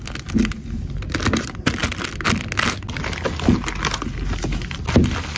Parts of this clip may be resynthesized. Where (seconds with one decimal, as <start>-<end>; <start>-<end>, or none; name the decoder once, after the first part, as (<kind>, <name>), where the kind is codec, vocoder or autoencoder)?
none